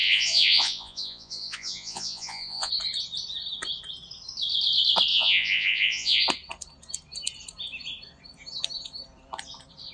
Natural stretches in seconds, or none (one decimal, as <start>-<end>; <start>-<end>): 2.7-5.1; 6.2-9.9